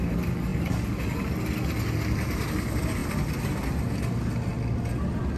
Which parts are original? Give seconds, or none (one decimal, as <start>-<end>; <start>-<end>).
0.0-5.4